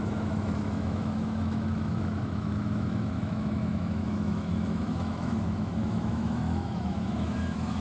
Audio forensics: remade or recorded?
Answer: remade